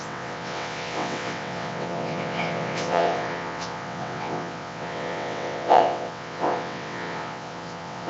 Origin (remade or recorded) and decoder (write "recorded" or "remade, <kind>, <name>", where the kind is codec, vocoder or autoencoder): remade, vocoder, WaveNeXt